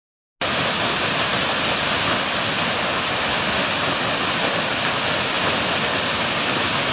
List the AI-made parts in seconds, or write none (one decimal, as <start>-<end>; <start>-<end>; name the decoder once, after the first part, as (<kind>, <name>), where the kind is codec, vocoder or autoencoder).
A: none